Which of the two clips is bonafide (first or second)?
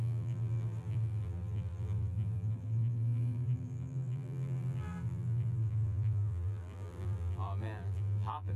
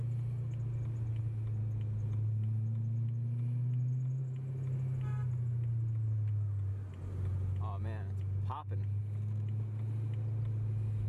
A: second